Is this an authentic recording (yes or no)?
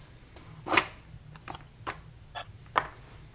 yes